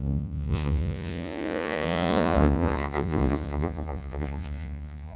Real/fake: fake